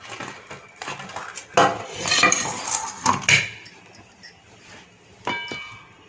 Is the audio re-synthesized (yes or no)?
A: no